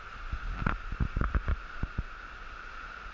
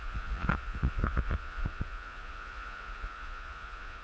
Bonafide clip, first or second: first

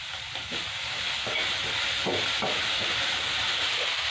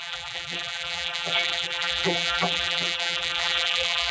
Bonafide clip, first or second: first